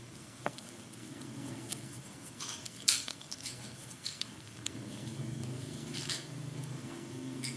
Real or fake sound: fake